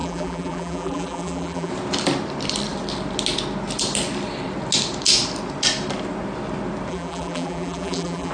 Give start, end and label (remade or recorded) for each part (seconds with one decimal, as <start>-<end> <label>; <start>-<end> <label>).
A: 0.0-1.7 remade; 1.7-6.9 recorded; 6.9-8.3 remade